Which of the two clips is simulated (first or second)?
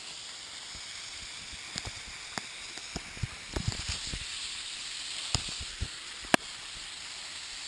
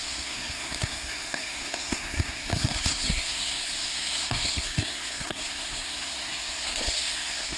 second